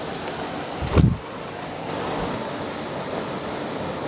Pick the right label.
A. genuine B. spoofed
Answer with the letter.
A